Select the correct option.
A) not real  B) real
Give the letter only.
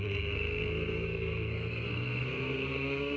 A